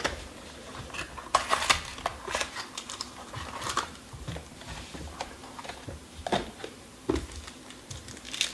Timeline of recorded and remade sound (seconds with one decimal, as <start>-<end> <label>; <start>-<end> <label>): 0.0-2.1 recorded; 2.1-6.9 remade; 6.9-8.5 recorded